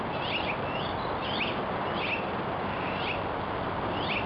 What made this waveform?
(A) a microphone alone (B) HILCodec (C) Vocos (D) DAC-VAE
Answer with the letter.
A